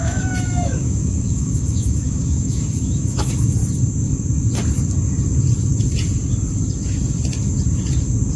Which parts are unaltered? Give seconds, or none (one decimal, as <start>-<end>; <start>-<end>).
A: 3.6-8.4